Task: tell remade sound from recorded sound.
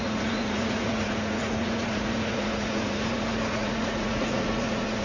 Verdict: remade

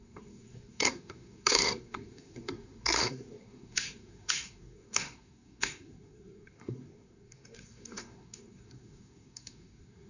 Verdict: remade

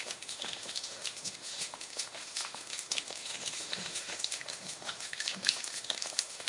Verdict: remade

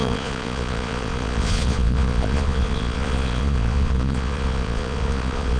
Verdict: remade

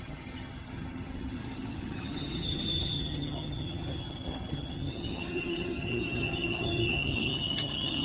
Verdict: remade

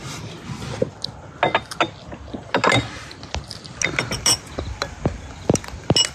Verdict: recorded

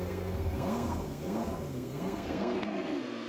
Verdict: remade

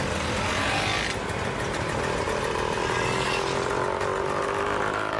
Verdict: recorded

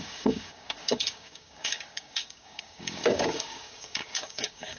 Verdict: remade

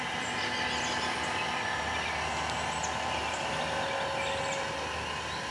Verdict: recorded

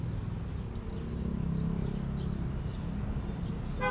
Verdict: recorded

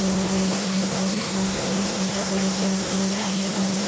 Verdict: remade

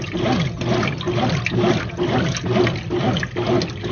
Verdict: recorded